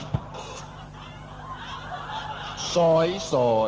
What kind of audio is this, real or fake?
real